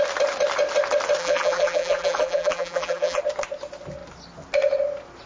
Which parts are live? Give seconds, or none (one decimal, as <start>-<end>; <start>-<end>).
0.0-1.2; 3.2-5.3